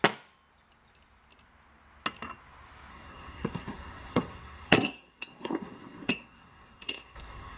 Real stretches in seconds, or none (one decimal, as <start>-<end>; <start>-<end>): 0.0-2.9